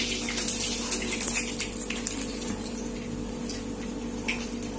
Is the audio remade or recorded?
recorded